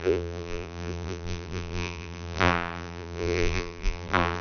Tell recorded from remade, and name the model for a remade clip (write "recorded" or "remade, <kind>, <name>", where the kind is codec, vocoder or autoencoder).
remade, vocoder, BigVGAN v2